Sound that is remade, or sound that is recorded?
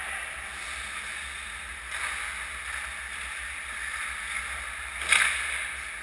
recorded